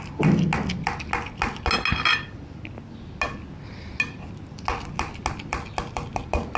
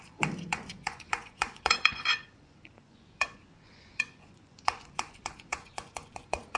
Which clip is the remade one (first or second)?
second